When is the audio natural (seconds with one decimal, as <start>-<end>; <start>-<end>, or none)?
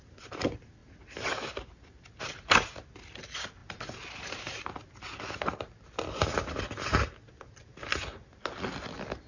0.0-9.3